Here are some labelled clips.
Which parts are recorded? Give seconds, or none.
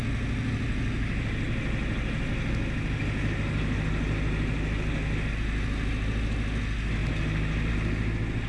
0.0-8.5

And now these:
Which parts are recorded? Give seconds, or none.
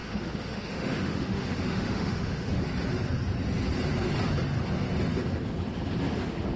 2.6-6.6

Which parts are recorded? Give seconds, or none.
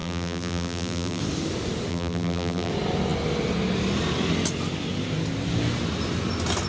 1.2-1.9; 2.7-6.7